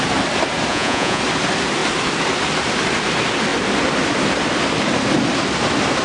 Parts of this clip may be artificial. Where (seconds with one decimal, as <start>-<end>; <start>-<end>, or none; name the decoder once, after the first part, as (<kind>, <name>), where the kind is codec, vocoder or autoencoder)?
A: 0.7-1.2 (vocoder, Vocos)